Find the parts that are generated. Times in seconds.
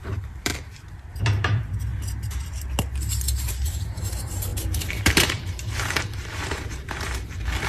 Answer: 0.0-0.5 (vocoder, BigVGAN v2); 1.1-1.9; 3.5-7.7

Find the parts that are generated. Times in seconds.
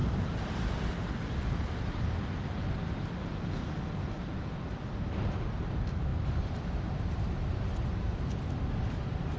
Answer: 0.0-1.8 (vocoder, BigVGAN v2); 6.1-7.0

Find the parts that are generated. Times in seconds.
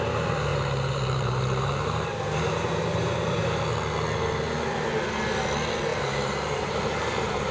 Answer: 0.5-3.6 (vocoder, BigVGAN v2); 5.9-7.5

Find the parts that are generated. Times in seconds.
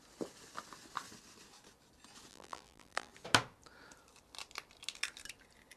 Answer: 2.3-3.1 (vocoder, BigVGAN v2)